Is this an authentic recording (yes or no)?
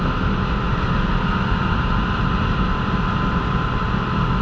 yes